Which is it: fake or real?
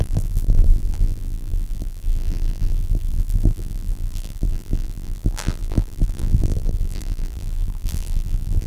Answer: fake